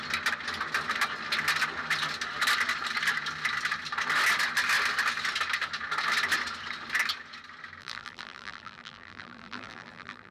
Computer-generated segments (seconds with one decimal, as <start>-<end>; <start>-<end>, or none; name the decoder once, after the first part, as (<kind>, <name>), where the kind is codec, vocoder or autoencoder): 7.8-10.3 (vocoder, BigVGAN v2)